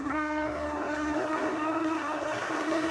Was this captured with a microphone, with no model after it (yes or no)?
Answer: no